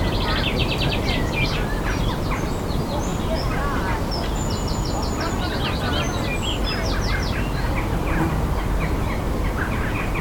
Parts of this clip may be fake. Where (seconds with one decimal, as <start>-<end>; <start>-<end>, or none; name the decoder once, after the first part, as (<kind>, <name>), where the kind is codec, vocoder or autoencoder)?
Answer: 0.6-1.3 (vocoder, BigVGAN v2)